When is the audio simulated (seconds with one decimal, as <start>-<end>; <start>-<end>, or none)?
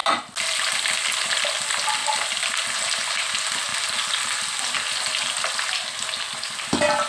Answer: none